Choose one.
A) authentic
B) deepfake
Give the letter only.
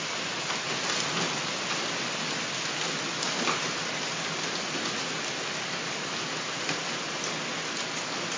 A